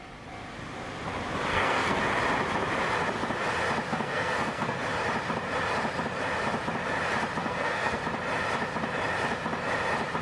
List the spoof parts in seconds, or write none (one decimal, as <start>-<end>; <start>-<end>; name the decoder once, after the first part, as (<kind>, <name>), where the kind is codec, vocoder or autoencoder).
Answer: 1.5-2.0 (codec, SNAC); 3.9-4.8; 7.4-8.0